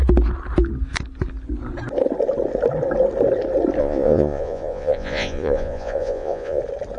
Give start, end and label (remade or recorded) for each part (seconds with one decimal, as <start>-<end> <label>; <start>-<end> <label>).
0.0-3.8 recorded; 3.8-6.6 remade; 6.6-7.0 recorded